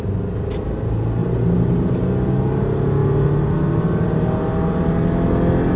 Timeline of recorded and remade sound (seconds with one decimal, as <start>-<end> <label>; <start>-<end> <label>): 0.0-1.2 recorded; 1.2-2.0 remade; 2.0-5.8 recorded